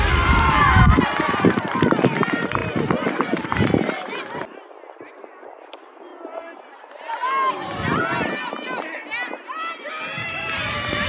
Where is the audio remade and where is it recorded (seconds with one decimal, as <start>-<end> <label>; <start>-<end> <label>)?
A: 0.0-6.1 remade; 6.1-7.5 recorded; 7.5-8.0 remade; 8.0-9.8 recorded; 9.8-11.1 remade